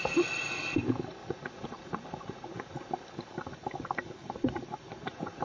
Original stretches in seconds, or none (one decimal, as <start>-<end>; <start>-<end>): 0.0-1.2; 2.9-4.2